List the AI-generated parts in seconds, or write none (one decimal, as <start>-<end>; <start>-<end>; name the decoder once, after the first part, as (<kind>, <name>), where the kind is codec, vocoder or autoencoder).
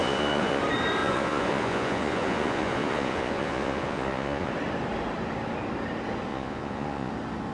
0.0-0.6 (vocoder, Vocos); 1.0-4.5; 6.3-7.1